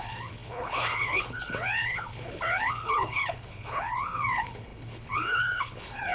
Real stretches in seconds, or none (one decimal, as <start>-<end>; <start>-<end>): none